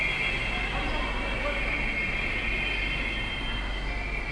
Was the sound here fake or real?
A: real